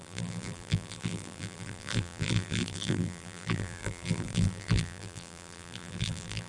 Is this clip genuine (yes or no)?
no